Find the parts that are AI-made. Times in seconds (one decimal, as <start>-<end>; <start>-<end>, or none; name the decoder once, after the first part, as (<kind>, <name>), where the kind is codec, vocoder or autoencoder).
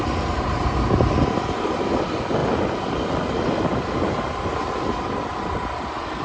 none